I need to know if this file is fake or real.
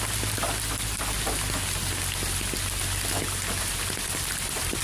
real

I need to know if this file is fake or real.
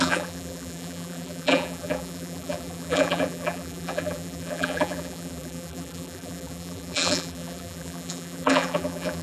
fake